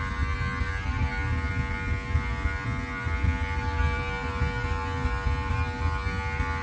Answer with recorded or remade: recorded